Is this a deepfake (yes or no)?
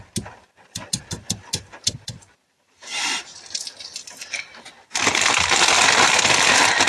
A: no